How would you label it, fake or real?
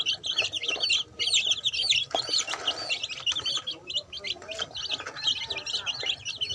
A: real